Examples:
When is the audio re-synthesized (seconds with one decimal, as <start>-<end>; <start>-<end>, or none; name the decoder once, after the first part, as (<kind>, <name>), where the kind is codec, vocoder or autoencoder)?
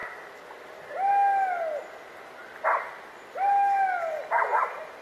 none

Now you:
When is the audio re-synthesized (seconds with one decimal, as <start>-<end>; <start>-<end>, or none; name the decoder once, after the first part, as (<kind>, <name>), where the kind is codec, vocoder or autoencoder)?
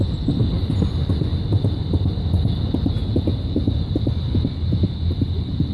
1.3-2.1 (vocoder, BigVGAN v2); 3.3-4.4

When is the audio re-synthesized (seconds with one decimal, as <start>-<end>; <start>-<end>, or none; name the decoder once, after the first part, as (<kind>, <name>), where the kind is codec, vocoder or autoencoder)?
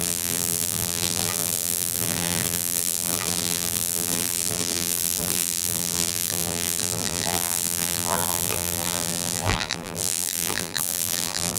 0.0-11.6 (vocoder, BigVGAN v2)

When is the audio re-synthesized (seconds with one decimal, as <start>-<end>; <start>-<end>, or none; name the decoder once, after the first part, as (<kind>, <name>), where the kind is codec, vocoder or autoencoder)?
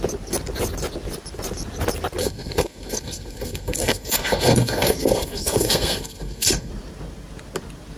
2.2-6.7 (codec, SNAC)